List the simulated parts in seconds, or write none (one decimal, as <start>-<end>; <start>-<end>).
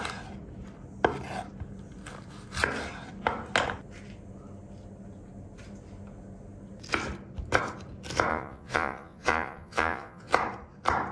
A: 8.3-10.3